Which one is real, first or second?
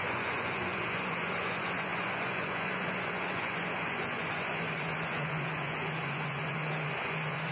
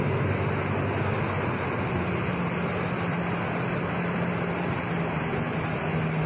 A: second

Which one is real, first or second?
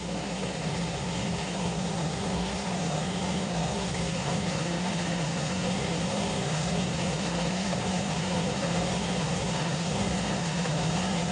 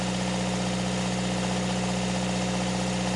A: second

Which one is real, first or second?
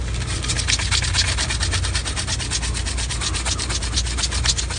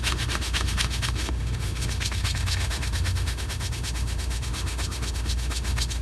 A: first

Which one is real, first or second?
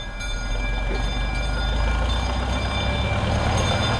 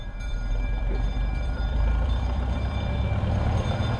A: first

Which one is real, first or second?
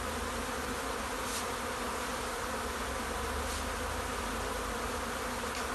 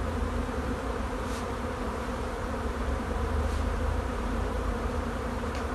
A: first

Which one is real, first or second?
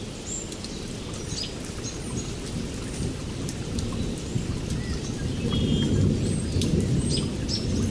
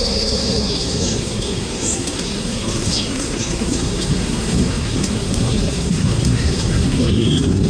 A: first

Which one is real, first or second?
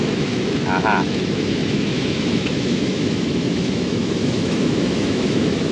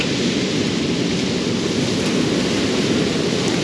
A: second